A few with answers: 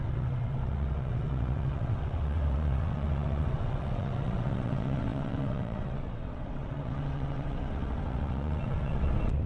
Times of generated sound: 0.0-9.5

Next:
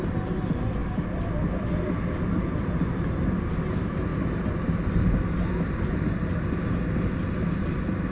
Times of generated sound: none

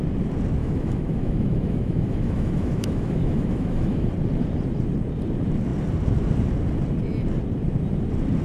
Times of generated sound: 0.6-4.1

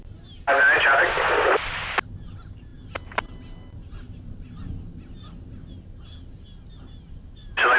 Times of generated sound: none

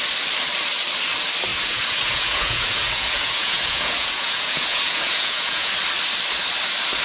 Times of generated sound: 1.5-5.7